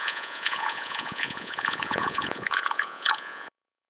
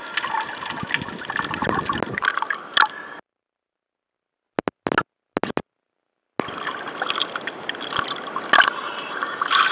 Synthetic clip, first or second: first